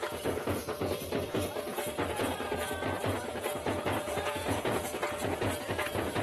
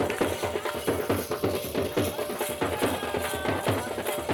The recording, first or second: second